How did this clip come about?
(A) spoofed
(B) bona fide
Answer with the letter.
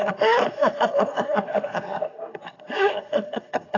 A